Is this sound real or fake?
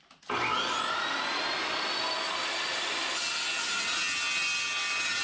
real